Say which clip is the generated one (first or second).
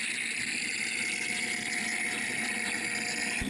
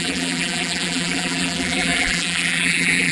second